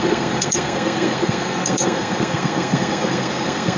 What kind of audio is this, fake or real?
fake